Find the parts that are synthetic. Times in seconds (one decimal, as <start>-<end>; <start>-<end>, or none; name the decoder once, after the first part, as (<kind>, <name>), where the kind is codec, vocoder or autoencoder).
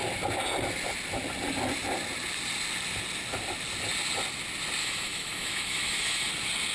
4.8-6.3 (autoencoder, DAC-VAE)